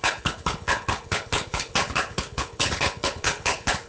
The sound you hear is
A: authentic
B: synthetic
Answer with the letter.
B